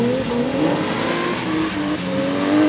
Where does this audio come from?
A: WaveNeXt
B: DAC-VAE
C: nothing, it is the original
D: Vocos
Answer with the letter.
C